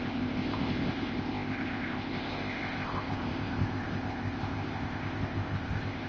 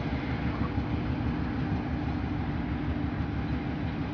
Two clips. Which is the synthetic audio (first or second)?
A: first